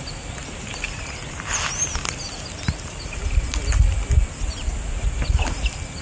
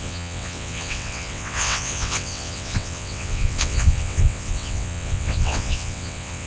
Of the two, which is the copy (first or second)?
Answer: second